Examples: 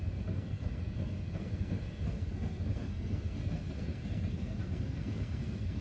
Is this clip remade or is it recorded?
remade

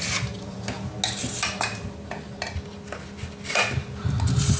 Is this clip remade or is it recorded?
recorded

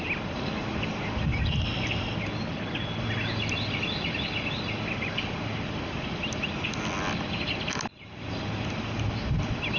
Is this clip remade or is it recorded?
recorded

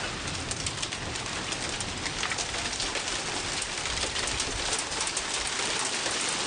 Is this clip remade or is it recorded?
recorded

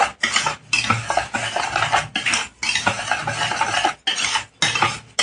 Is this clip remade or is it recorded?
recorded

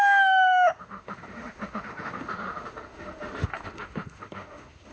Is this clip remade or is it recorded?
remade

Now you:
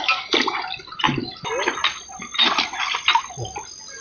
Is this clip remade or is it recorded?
recorded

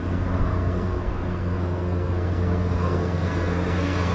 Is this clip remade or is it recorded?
remade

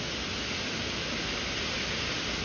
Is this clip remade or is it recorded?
recorded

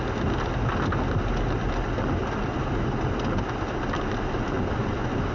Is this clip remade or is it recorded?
recorded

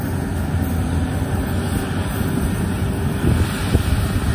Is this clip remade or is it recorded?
recorded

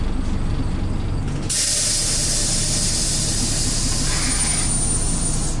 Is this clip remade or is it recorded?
recorded